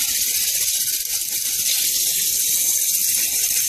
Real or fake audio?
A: real